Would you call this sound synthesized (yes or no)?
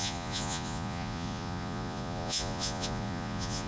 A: yes